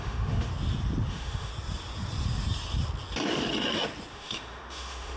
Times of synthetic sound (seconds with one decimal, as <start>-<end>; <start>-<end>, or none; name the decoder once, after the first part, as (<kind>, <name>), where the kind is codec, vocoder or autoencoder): 0.0-0.5 (autoencoder, DAC-VAE); 1.1-1.5; 4.1-5.2